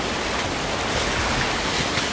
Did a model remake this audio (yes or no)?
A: no